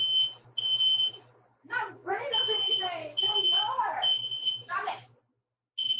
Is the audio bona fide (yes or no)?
yes